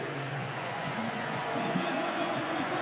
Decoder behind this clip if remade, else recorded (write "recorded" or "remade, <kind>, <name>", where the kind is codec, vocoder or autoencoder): remade, vocoder, Vocos